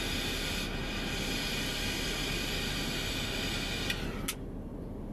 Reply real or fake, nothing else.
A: real